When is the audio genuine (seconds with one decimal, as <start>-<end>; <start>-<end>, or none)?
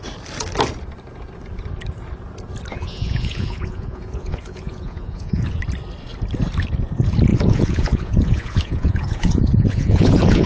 0.0-2.7; 5.6-7.3